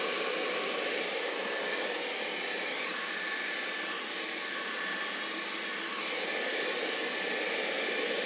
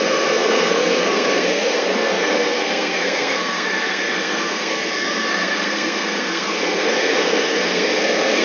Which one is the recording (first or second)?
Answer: first